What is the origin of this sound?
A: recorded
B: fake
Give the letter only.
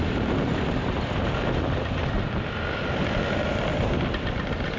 A